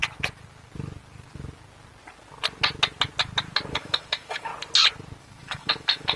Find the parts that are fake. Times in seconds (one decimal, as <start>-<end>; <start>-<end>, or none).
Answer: 3.7-4.5; 5.2-6.2